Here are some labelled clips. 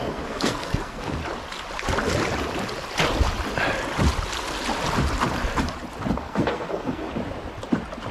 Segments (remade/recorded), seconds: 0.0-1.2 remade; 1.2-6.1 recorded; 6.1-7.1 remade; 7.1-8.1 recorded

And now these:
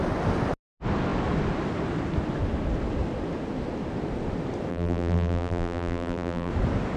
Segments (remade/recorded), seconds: 0.0-4.7 recorded; 4.7-6.5 remade; 6.5-7.0 recorded

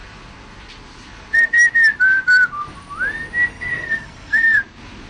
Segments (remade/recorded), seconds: 0.0-3.5 recorded; 3.5-4.6 remade; 4.6-5.1 recorded

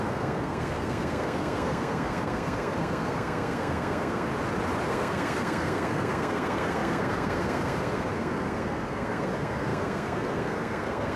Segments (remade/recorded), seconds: 0.0-4.3 remade; 4.3-4.9 recorded; 4.9-11.2 remade

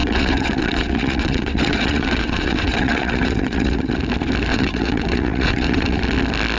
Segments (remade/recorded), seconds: 0.0-4.0 remade; 4.0-4.5 recorded; 4.5-6.0 remade; 6.0-6.6 recorded

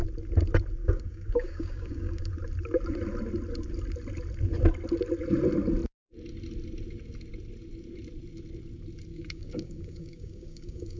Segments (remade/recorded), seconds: 0.0-0.8 recorded; 0.8-2.3 remade; 2.3-9.1 recorded; 9.1-11.0 remade

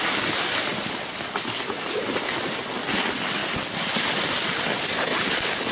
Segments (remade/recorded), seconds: 0.0-5.7 recorded

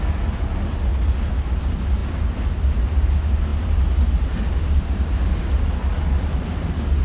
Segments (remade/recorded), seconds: 0.0-7.0 recorded